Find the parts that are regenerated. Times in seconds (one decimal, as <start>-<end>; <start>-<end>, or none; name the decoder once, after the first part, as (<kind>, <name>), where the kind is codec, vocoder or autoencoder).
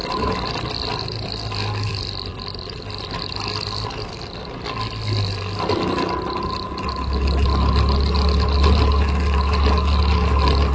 none